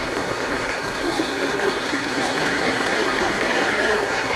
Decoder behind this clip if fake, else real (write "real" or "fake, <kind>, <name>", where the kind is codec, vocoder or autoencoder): fake, codec, SNAC